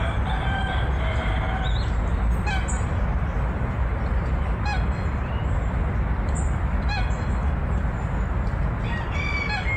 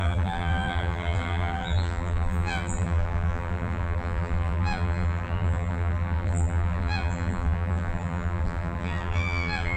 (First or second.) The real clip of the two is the first